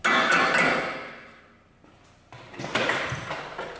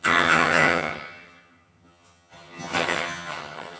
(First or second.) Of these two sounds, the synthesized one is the second